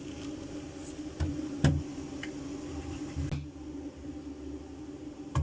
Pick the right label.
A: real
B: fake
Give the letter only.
A